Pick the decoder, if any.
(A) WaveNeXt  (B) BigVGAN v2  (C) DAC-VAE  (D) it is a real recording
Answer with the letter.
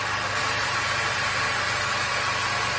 D